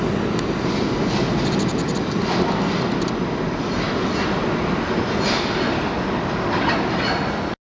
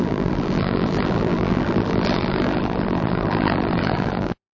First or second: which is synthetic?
second